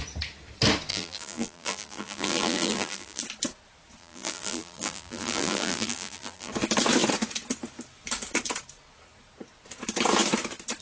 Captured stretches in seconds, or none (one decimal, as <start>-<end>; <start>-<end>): 0.0-0.9; 3.2-4.0; 6.5-10.8